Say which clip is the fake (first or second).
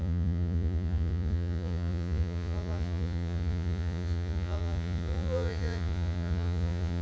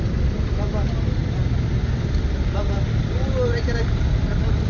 first